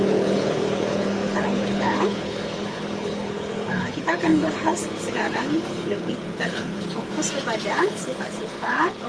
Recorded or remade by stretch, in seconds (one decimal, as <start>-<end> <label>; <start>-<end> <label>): 0.0-7.1 remade; 7.1-7.7 recorded; 7.7-9.1 remade